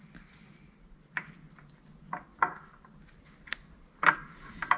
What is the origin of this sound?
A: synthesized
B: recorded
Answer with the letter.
B